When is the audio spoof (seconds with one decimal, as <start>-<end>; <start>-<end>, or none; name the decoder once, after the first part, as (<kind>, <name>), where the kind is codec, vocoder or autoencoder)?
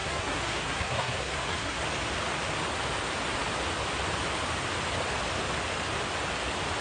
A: 0.0-1.8 (codec, SNAC)